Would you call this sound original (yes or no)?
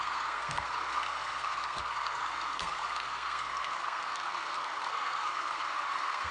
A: no